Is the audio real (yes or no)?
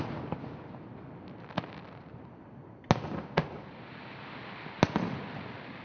yes